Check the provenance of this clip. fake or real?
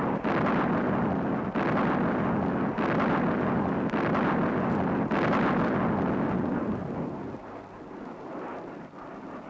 real